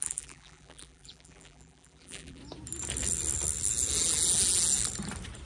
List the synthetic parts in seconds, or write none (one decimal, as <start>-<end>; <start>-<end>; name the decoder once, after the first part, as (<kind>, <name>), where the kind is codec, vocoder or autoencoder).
0.0-2.4 (vocoder, BigVGAN v2)